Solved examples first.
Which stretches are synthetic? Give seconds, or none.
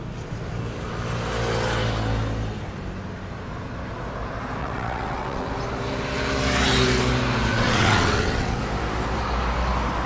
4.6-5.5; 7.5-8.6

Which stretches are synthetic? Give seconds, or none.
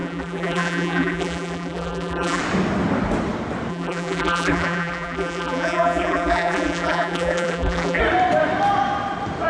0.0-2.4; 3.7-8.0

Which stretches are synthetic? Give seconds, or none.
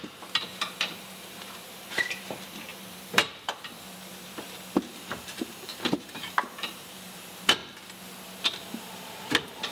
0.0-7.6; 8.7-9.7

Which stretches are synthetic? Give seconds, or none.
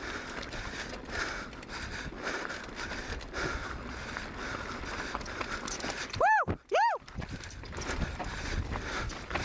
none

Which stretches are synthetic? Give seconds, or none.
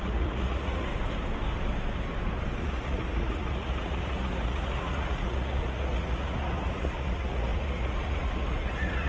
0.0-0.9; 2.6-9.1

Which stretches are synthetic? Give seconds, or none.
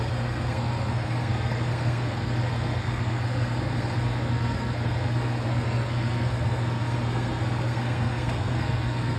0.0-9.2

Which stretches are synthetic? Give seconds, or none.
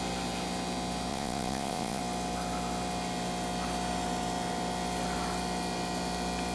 1.1-2.0